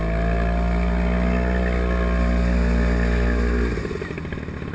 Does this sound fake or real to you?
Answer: real